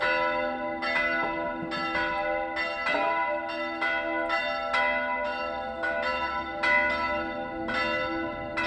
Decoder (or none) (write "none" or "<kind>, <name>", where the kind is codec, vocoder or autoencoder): none